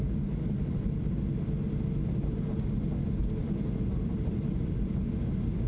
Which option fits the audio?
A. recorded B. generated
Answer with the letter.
A